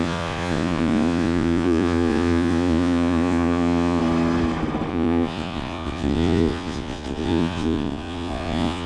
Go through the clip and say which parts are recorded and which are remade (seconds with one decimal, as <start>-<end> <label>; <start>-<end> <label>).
0.0-4.0 remade; 4.0-4.9 recorded; 4.9-8.9 remade